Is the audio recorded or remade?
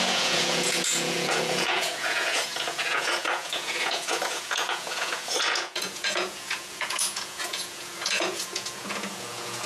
remade